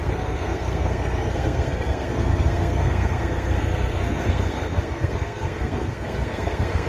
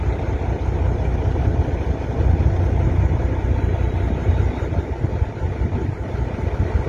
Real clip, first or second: second